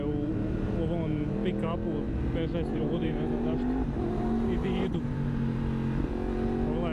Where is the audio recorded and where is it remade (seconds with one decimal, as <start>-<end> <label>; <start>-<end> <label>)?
0.0-2.7 recorded; 2.7-5.6 remade; 5.6-6.9 recorded